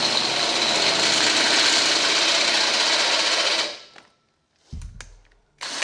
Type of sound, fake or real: real